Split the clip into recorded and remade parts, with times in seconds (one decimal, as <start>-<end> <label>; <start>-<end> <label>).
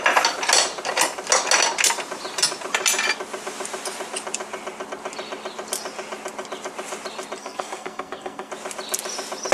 0.0-7.4 recorded; 7.4-8.5 remade; 8.5-9.5 recorded